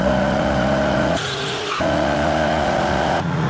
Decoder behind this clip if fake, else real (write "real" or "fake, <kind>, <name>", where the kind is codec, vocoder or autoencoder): fake, vocoder, Vocos